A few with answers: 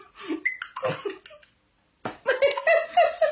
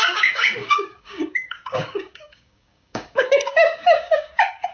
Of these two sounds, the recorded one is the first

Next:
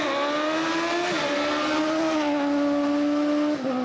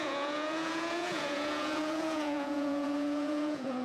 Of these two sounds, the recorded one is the first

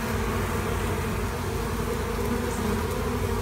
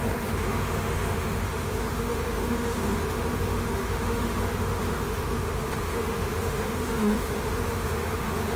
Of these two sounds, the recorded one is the first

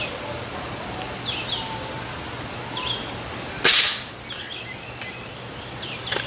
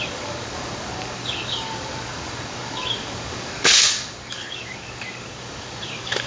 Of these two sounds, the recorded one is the first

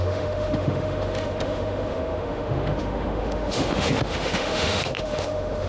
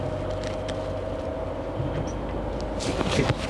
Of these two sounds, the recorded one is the second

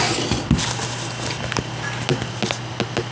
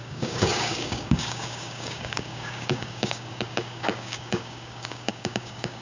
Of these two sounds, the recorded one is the first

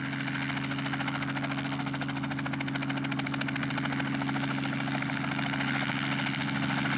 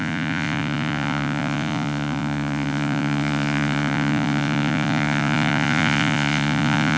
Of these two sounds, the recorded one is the first